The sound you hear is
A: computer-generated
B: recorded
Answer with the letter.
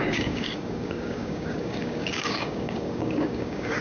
A